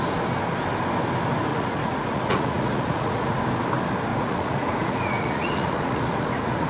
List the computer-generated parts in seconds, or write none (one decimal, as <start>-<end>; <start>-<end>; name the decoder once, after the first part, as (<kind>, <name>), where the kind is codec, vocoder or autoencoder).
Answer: 1.5-3.4 (vocoder, Vocos); 4.1-6.7